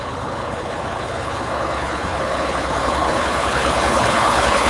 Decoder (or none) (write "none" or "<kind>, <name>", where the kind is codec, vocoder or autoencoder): codec, HILCodec